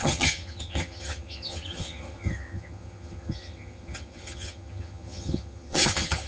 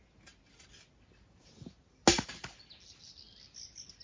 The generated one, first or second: first